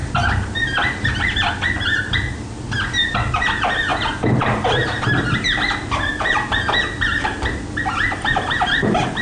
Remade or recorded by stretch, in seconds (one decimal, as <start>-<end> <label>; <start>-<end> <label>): 0.0-9.2 recorded